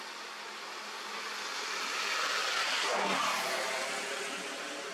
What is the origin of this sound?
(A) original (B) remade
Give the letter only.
A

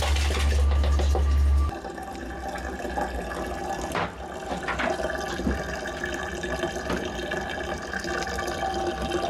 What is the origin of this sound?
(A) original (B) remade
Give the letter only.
A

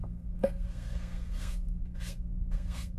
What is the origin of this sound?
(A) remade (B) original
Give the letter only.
A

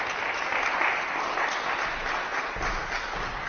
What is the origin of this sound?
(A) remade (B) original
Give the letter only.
B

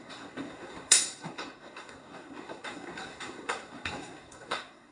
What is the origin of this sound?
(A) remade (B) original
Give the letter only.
A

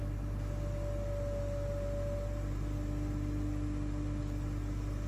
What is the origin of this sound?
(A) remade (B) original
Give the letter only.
B